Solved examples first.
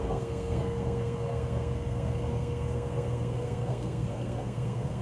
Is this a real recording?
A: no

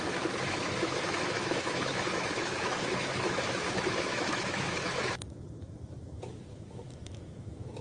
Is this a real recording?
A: no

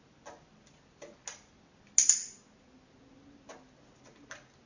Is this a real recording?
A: yes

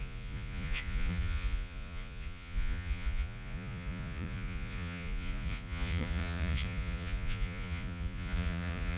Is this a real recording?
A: no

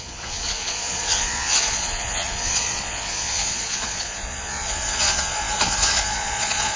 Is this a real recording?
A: no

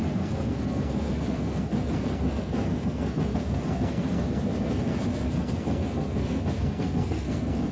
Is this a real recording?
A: no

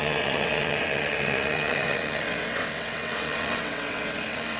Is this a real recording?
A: no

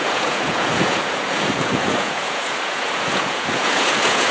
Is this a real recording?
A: no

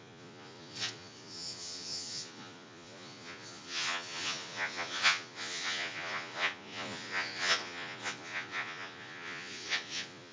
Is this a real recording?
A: no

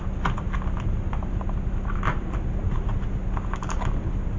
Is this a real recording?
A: yes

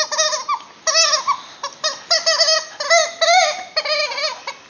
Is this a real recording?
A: yes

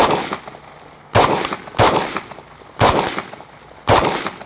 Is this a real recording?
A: yes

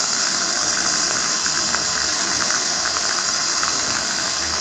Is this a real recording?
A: no